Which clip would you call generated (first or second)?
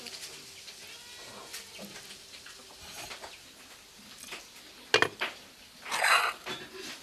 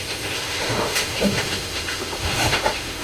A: second